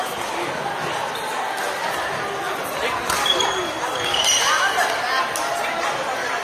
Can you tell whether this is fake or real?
real